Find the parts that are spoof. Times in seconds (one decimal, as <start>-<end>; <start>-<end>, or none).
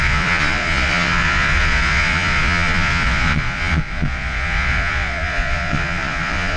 0.0-6.6